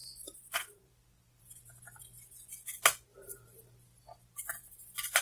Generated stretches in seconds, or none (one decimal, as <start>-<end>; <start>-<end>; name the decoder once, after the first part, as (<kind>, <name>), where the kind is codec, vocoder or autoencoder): 0.0-2.0 (vocoder, BigVGAN v2); 3.1-4.4